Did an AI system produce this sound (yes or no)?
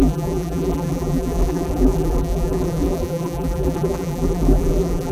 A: yes